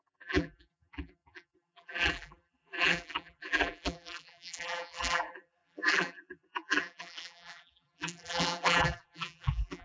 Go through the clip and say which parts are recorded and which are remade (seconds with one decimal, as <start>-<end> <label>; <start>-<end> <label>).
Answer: 0.0-9.8 remade